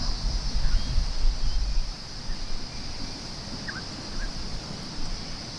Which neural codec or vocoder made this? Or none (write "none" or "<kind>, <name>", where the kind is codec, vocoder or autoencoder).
none